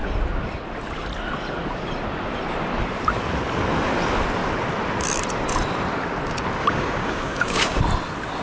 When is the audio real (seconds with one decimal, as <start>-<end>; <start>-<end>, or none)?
0.0-6.6; 7.8-8.4